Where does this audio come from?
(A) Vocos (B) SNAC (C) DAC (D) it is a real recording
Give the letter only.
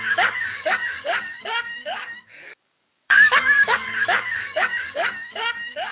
C